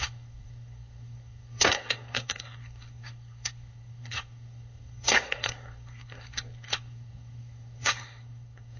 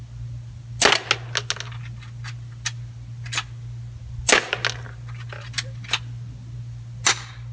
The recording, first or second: second